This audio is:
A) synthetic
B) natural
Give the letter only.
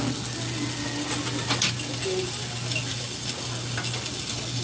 B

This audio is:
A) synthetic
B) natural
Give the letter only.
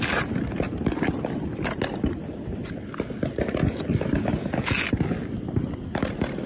B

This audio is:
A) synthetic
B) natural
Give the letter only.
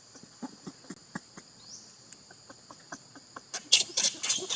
B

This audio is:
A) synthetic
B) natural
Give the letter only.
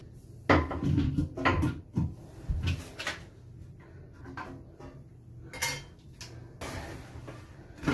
B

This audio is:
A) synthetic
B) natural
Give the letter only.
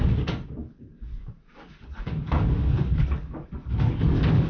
A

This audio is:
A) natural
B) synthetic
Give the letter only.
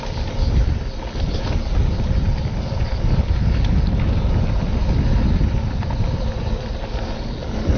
A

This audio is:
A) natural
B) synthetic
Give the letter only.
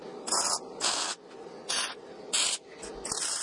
A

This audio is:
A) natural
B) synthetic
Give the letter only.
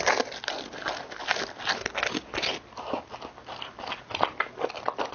A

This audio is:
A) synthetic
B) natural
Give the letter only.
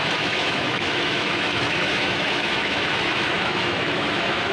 A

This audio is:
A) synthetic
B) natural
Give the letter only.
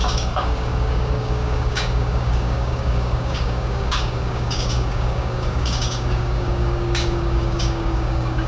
A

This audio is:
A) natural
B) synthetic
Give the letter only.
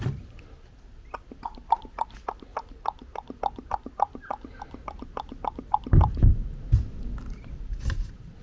A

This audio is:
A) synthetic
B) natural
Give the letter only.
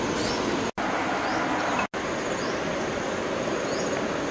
B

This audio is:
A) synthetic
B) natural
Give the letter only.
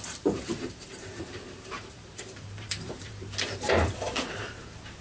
A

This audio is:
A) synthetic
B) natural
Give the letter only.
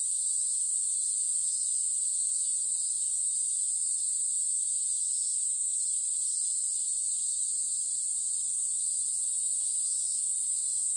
B